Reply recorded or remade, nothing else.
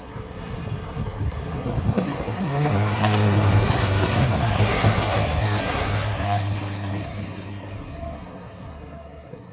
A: remade